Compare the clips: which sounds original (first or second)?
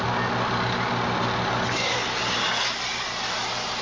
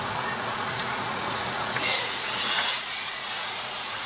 first